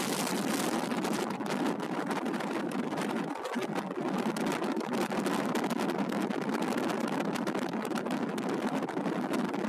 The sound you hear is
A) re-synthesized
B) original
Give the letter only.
B